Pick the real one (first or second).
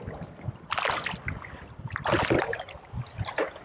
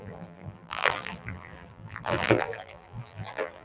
first